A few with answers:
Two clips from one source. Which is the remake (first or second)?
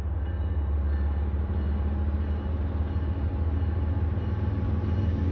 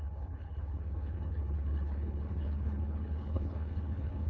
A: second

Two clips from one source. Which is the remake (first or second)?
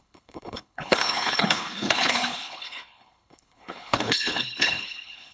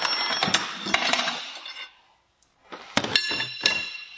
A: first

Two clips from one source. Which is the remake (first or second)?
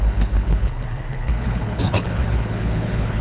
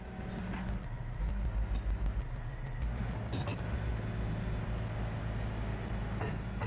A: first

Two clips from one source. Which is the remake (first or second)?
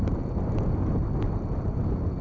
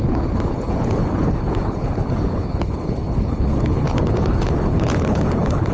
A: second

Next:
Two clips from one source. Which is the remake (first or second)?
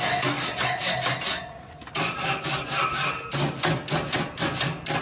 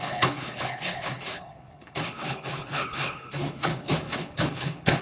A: second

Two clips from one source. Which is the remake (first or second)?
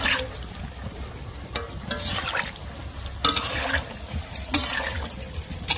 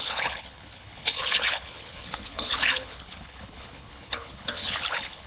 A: second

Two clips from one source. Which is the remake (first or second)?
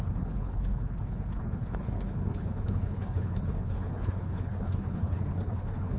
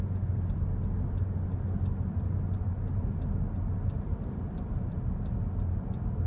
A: first